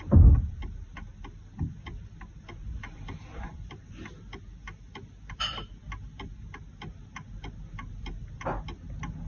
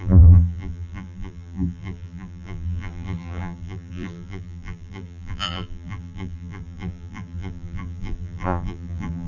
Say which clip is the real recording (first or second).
first